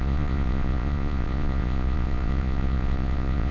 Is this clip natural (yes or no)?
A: no